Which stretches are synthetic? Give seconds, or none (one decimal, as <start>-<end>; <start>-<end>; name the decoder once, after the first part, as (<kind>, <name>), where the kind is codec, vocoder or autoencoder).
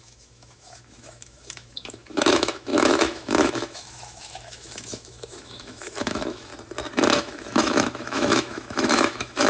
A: 0.0-6.5 (autoencoder, DAC-VAE); 7.2-9.5